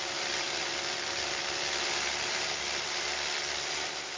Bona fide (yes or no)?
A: yes